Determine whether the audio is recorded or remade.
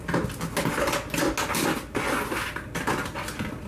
recorded